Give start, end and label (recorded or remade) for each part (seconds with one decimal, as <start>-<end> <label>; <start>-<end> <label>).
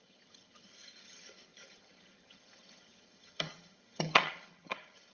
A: 0.0-5.1 remade